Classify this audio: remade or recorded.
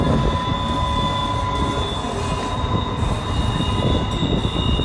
recorded